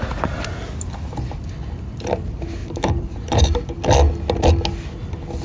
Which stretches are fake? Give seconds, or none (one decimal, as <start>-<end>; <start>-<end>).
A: 2.6-3.7